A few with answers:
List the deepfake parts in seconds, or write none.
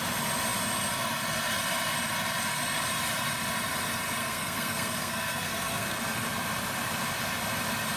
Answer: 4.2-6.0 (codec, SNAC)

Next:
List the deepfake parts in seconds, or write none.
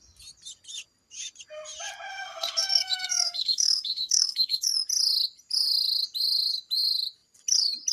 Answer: 2.1-4.7 (codec, SNAC)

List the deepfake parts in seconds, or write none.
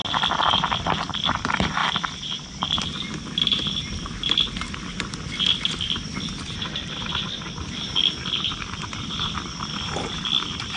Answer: none